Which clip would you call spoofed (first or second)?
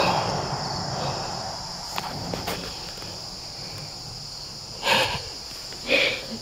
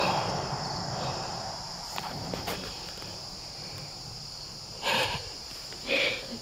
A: second